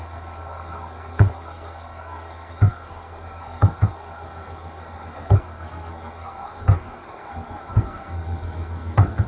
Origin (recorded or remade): remade